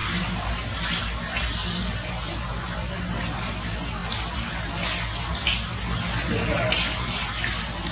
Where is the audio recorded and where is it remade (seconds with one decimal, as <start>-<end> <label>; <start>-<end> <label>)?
0.0-7.9 recorded